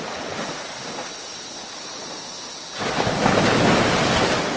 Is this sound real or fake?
real